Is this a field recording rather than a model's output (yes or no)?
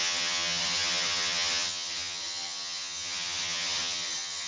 no